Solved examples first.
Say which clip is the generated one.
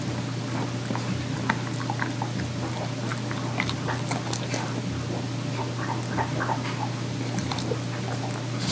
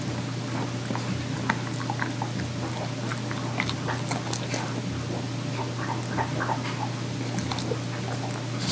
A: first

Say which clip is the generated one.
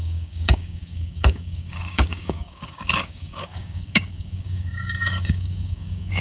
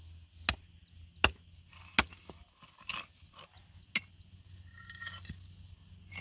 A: first